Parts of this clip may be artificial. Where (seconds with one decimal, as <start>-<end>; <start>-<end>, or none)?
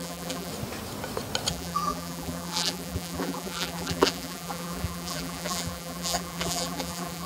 0.0-0.5; 1.5-7.3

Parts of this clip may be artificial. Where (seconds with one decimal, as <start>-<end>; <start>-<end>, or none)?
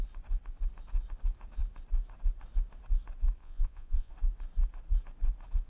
3.4-4.1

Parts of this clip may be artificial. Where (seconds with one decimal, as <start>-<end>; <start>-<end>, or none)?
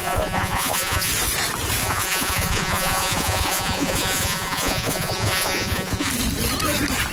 0.0-1.1; 1.8-6.1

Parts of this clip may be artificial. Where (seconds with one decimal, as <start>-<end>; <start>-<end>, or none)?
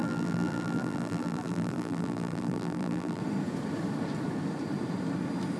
0.0-3.2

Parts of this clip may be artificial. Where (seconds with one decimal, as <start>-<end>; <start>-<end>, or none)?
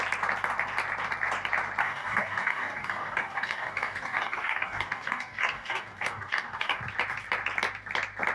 1.8-6.8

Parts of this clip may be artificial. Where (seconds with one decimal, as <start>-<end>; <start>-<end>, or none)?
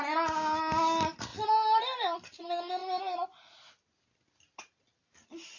none